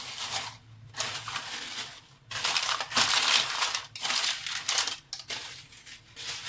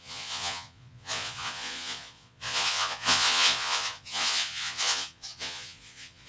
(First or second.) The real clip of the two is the first